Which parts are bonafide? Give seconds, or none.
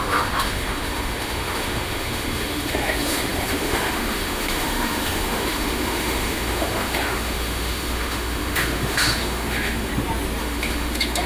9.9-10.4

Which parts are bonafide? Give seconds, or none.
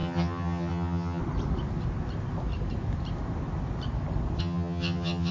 1.2-4.4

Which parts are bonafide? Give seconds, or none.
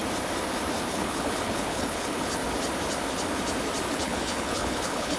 0.0-0.9; 2.4-3.9